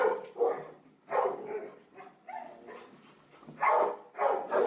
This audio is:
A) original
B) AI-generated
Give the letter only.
A